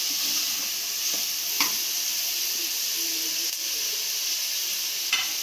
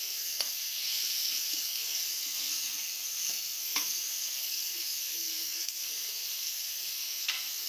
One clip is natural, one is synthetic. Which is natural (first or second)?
first